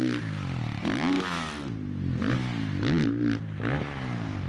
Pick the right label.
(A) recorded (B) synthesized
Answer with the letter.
A